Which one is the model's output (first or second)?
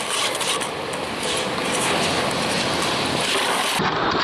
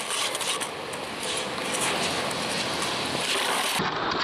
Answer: first